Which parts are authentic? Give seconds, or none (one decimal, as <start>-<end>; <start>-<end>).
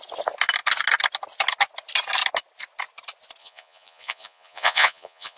0.0-3.4